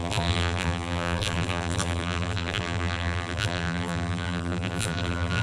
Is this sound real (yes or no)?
no